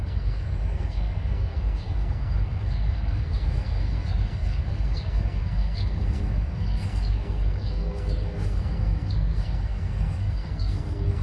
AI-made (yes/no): yes